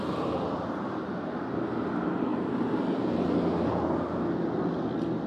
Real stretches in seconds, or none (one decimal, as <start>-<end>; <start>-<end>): 0.0-5.3